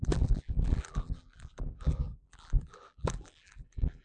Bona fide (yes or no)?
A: no